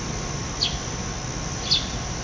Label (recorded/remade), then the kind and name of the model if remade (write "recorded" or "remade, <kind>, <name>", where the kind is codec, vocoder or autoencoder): recorded